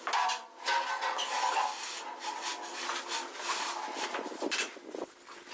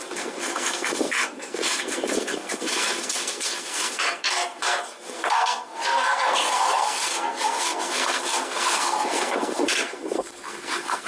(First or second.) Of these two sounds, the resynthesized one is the second